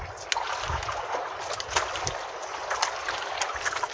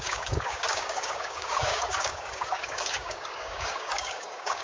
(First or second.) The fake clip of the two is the second